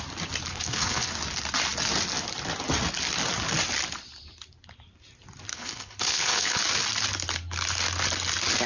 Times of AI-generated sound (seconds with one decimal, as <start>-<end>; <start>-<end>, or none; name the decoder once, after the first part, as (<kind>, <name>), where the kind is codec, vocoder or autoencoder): 0.5-1.1 (codec, HILCodec); 5.5-6.6